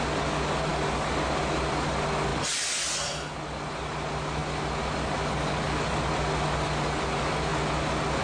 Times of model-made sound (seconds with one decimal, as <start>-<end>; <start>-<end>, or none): none

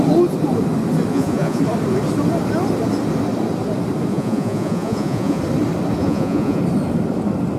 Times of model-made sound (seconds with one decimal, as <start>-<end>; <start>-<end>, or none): 1.1-1.6; 4.1-5.4; 6.0-6.6

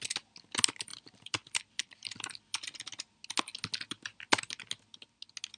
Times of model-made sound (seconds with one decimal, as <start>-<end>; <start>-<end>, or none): 0.9-2.4

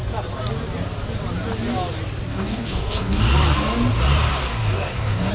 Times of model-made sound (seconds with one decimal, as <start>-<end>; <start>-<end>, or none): 2.3-3.2; 4.5-5.3

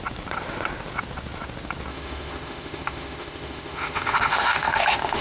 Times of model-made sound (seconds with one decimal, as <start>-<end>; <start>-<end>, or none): 1.9-5.2

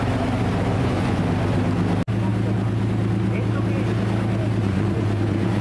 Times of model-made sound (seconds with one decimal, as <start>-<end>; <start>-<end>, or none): 0.7-1.2; 4.6-5.6

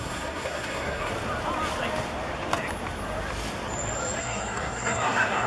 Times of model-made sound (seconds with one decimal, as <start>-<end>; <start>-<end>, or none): 0.0-1.1; 4.2-5.5

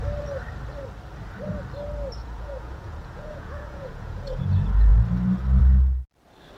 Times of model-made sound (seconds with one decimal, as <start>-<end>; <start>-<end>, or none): 2.2-4.4